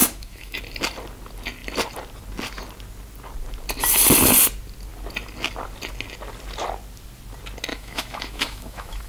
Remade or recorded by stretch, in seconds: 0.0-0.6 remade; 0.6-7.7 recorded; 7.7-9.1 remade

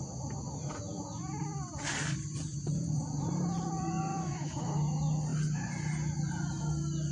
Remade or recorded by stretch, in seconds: 0.0-4.1 recorded; 4.1-4.8 remade; 4.8-7.1 recorded

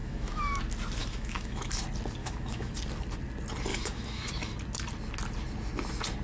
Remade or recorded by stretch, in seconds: 0.0-0.6 remade; 0.6-1.0 recorded; 1.0-1.7 remade; 1.7-2.2 recorded; 2.2-2.7 remade; 2.7-3.7 recorded; 3.7-4.3 remade; 4.3-6.2 recorded

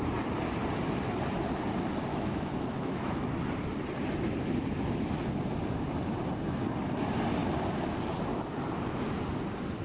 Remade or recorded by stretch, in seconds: 0.0-2.1 recorded; 2.1-3.4 remade; 3.4-9.8 recorded

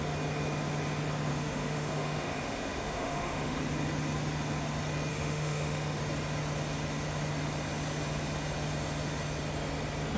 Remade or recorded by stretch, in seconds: 0.0-1.3 recorded; 1.3-3.6 remade; 3.6-5.1 recorded; 5.1-6.0 remade; 6.0-10.2 recorded